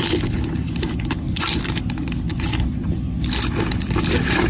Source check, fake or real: real